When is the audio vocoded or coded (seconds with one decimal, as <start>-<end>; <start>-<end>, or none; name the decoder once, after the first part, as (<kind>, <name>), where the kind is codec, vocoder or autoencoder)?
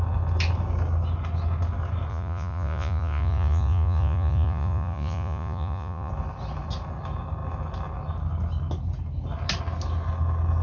2.1-6.1 (vocoder, Vocos)